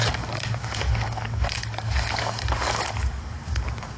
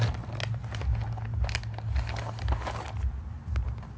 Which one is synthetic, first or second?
first